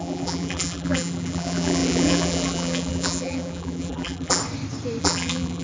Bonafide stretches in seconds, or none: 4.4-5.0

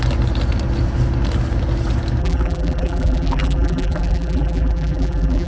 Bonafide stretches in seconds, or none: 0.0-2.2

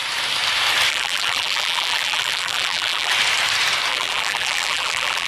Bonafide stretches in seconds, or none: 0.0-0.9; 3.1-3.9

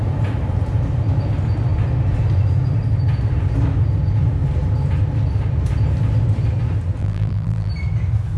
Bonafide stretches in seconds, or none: 0.0-7.0; 7.7-8.4

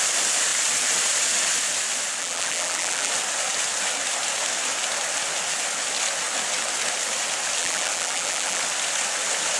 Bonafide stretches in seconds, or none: 0.0-2.2; 3.1-7.6; 8.6-9.6

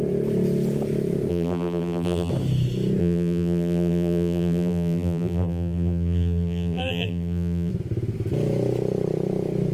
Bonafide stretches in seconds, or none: 0.0-1.3; 2.3-3.0; 7.7-9.7

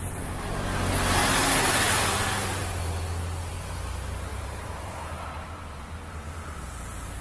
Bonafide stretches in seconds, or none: 0.0-1.2; 2.0-4.3; 6.1-7.2